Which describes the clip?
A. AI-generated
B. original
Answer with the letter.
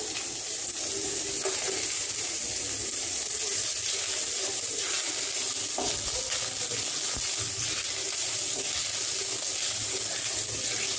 B